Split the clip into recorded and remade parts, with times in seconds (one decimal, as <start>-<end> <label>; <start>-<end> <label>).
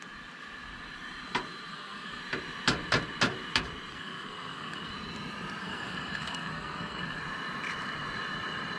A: 0.0-1.7 recorded; 1.7-2.2 remade; 2.2-3.9 recorded; 3.9-4.9 remade; 4.9-5.6 recorded; 5.6-7.2 remade; 7.2-8.8 recorded